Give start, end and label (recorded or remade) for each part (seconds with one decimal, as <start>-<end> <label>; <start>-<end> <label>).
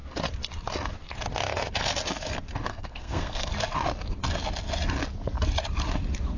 0.0-2.7 recorded; 2.7-3.5 remade; 3.5-6.4 recorded